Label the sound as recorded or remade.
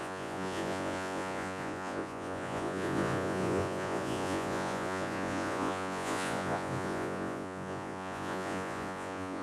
remade